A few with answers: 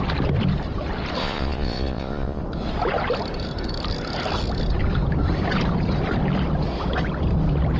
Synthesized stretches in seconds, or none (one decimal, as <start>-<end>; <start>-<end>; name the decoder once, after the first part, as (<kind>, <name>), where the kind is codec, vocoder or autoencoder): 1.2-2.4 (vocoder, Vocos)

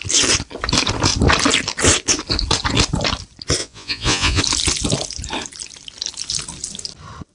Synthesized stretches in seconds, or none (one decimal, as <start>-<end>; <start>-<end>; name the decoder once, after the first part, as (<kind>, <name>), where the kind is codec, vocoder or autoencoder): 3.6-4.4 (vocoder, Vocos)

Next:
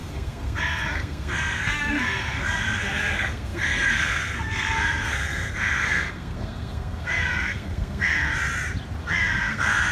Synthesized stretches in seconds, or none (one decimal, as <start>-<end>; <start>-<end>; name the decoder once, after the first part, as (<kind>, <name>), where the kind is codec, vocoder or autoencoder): 0.0-8.3 (codec, SNAC); 9.0-9.9

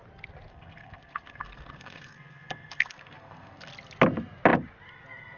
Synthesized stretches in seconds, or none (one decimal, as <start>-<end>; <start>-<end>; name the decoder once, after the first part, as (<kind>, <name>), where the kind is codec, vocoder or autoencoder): 0.5-3.7 (codec, SNAC)